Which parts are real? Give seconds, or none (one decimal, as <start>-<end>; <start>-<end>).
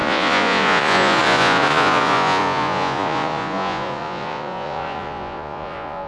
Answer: none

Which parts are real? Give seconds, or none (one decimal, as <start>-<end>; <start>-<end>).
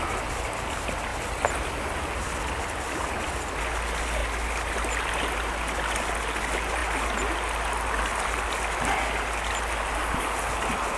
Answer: 0.0-11.0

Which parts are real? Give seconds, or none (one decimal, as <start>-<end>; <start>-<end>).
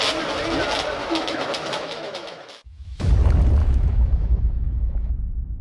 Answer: 0.0-1.0; 3.1-3.6; 5.1-5.6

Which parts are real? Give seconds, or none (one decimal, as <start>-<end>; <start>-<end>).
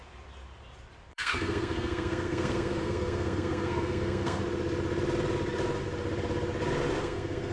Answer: 0.0-1.1; 4.4-7.0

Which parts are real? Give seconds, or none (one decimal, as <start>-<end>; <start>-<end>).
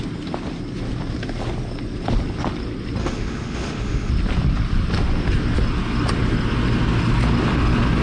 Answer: 0.0-3.0; 4.1-8.0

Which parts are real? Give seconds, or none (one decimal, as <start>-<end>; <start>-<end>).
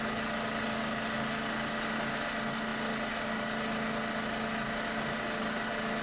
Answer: 0.0-6.0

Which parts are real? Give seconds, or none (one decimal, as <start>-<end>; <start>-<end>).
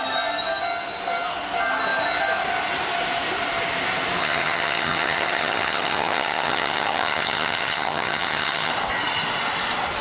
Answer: 0.0-4.2; 8.7-10.0